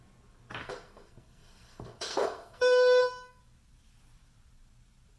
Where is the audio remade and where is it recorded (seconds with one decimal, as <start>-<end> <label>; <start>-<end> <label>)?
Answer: 0.0-0.6 recorded; 0.6-3.4 remade; 3.4-5.2 recorded